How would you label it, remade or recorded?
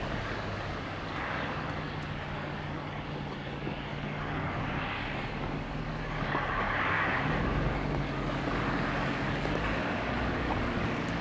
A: remade